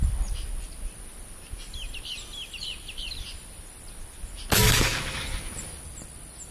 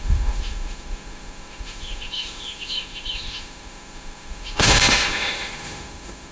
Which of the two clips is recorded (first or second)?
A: first